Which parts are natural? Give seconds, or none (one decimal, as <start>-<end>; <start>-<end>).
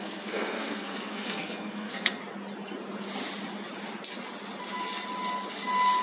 2.2-6.0